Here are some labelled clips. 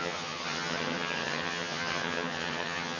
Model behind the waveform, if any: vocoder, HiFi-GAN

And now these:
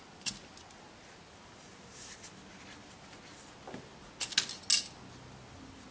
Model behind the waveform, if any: none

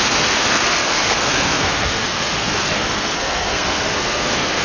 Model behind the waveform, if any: codec, SNAC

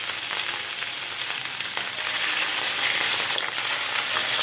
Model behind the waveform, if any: none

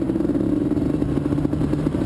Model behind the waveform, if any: vocoder, BigVGAN v2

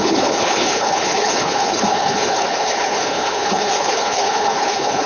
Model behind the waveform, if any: codec, HILCodec